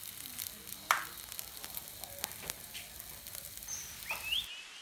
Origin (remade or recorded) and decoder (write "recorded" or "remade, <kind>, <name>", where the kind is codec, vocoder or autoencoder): recorded